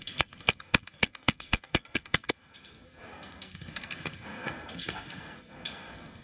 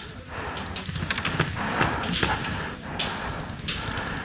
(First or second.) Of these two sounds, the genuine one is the second